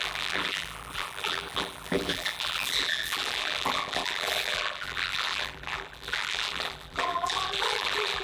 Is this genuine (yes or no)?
no